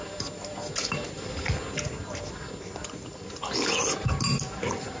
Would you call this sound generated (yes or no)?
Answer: no